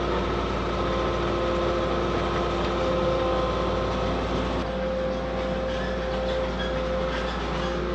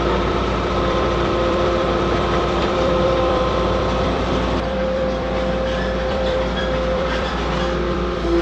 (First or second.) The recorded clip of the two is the first